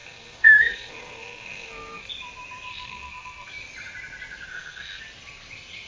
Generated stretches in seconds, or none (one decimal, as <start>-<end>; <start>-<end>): 0.0-2.1; 2.7-3.5; 4.5-5.0